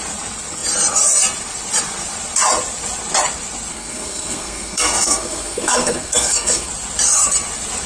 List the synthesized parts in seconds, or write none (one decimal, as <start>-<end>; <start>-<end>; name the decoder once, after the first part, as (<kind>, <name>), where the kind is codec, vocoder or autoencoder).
3.7-6.7 (codec, SNAC)